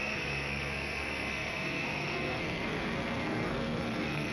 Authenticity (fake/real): fake